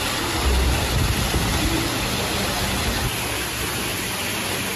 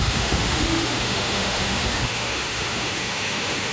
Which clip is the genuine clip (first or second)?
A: first